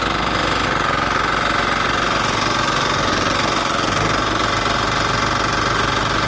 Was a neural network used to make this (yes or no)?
no